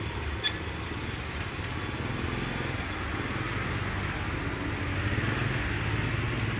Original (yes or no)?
yes